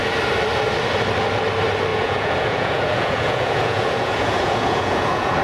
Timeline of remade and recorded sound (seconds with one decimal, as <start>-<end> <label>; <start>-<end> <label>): 0.0-1.9 recorded; 1.9-5.4 remade